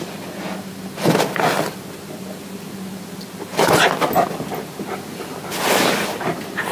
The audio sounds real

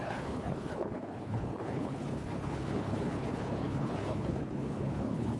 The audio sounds fake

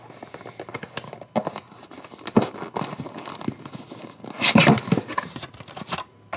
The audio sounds real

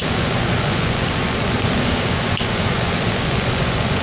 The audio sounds fake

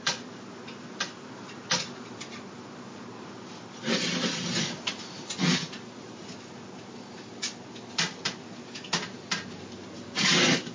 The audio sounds real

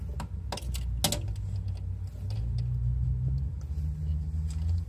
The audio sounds real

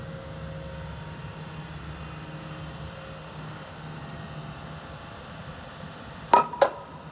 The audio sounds real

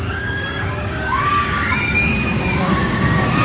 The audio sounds fake